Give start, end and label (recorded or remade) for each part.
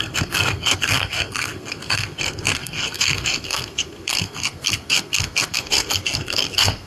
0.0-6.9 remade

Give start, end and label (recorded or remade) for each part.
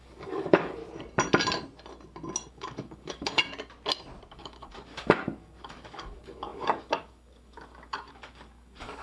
0.0-0.8 remade; 0.8-2.5 recorded; 2.5-3.4 remade; 3.4-4.3 recorded; 4.3-9.0 remade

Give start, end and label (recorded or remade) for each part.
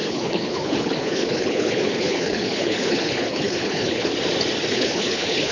0.0-4.1 remade; 4.1-4.7 recorded; 4.7-5.5 remade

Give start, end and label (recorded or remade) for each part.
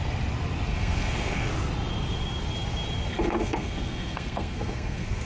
0.0-0.7 recorded; 0.7-1.5 remade; 1.5-3.1 recorded; 3.1-5.3 remade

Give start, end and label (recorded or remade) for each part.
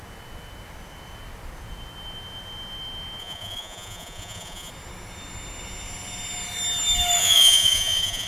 0.0-3.2 recorded; 3.2-4.7 remade; 4.7-7.2 recorded; 7.2-8.3 remade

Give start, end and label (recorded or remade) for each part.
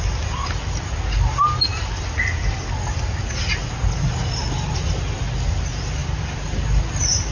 0.0-7.3 recorded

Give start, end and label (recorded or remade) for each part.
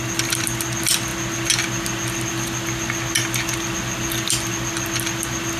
0.0-5.6 recorded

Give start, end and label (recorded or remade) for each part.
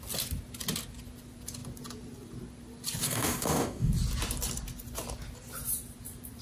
0.0-3.0 recorded; 3.0-3.9 remade; 3.9-6.4 recorded